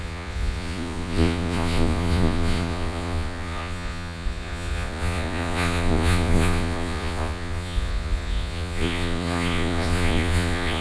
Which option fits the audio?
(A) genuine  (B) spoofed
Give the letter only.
B